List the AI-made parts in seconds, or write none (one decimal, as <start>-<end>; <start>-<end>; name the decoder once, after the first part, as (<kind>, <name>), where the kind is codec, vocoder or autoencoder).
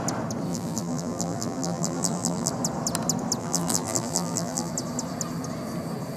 0.5-2.5 (vocoder, BigVGAN v2); 3.4-4.7